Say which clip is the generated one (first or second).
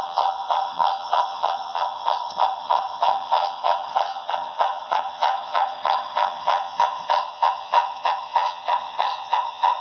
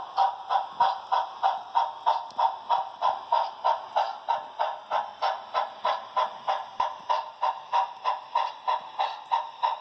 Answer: first